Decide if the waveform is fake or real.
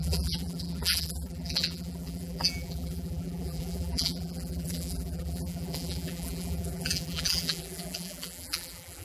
fake